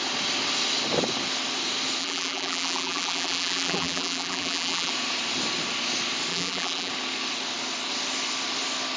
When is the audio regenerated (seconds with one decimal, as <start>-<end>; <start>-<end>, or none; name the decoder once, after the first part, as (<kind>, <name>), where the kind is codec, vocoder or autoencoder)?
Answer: 2.0-4.9 (vocoder, BigVGAN v2); 6.3-6.9